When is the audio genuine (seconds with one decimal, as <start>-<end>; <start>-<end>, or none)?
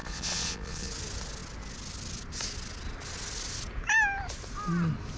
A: 0.9-5.2